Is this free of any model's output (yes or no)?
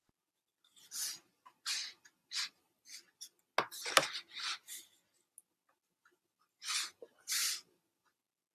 yes